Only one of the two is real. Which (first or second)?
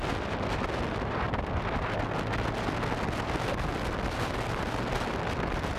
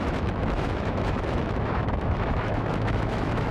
first